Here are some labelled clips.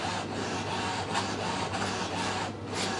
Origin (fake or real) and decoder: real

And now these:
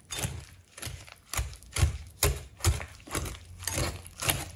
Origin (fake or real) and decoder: real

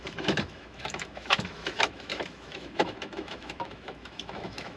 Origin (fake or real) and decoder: fake, autoencoder, DAC-VAE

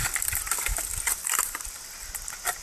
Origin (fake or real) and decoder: real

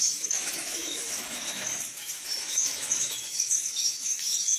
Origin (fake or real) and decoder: fake, autoencoder, DAC-VAE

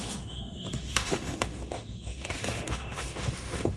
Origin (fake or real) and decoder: fake, autoencoder, DAC-VAE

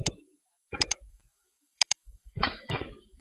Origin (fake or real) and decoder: fake, autoencoder, DAC-VAE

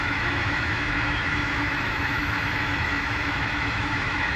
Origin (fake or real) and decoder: fake, autoencoder, DAC-VAE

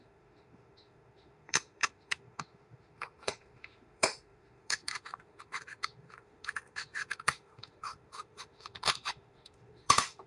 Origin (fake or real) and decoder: fake, autoencoder, DAC-VAE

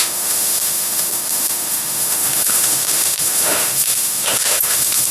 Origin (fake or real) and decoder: fake, autoencoder, DAC-VAE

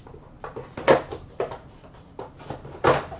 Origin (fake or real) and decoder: real